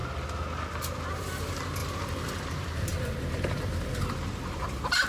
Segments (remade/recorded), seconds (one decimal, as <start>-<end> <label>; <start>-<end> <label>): 0.0-1.1 recorded; 1.1-5.1 remade